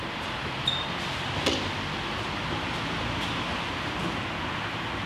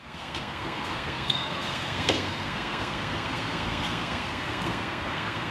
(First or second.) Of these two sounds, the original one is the first